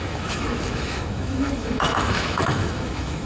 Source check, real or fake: fake